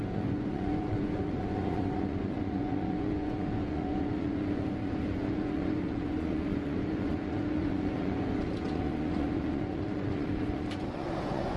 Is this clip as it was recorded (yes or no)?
no